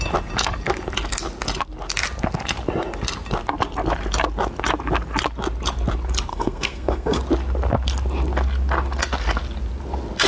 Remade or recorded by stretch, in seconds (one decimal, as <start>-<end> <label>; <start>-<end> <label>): 0.0-6.3 recorded; 6.3-7.2 remade; 7.2-10.3 recorded